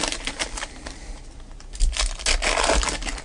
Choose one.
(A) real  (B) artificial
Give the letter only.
A